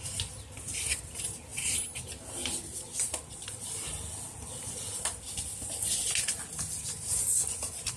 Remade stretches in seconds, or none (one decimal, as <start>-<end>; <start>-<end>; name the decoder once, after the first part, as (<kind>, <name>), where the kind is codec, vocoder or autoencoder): none